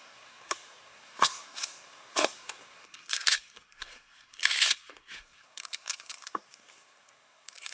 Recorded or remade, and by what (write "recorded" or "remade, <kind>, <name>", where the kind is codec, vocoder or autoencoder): remade, codec, SNAC